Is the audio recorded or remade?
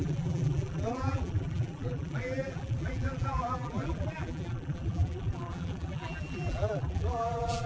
remade